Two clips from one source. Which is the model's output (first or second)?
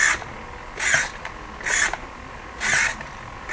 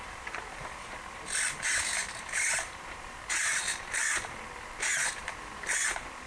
second